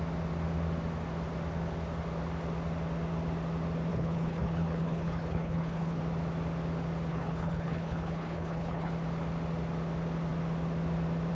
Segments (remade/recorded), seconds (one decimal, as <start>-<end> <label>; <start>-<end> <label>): 0.0-3.9 recorded; 3.9-6.0 remade; 6.0-7.1 recorded; 7.1-8.9 remade; 8.9-11.3 recorded